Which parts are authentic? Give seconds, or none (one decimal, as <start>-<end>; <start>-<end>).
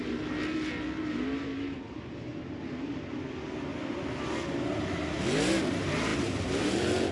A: 0.0-7.1